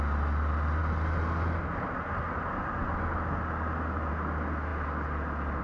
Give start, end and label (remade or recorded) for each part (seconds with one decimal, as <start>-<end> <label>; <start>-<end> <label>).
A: 0.0-5.6 recorded